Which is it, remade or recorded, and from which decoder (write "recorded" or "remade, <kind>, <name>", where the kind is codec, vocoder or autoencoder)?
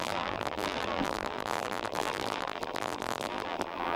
remade, vocoder, BigVGAN v2